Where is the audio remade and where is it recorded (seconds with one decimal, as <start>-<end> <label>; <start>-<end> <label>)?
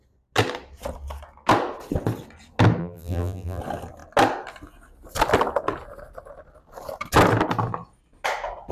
0.0-2.8 recorded; 2.8-3.6 remade; 3.6-8.7 recorded